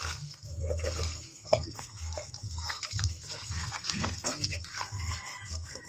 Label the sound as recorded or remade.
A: remade